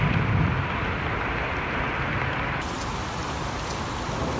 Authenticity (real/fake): real